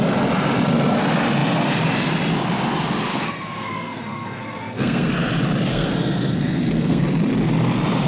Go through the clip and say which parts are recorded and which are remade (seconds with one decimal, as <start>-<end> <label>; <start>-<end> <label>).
0.0-3.1 recorded; 3.1-5.1 remade; 5.1-5.7 recorded; 5.7-7.0 remade; 7.0-8.1 recorded